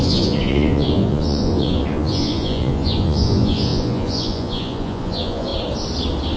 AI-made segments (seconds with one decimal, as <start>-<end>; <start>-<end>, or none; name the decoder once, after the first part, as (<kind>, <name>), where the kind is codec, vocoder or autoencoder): 0.0-5.5 (vocoder, Vocos)